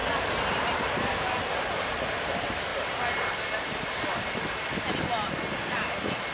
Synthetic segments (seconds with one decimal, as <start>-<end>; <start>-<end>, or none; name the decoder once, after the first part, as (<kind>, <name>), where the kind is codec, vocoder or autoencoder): none